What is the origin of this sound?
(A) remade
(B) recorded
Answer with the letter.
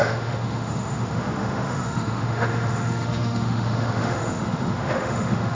A